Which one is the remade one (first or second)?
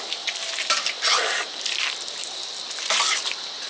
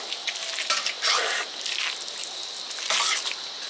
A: first